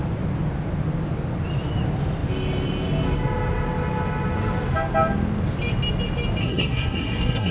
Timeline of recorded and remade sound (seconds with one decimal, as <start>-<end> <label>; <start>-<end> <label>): 0.0-6.4 recorded; 6.4-7.5 remade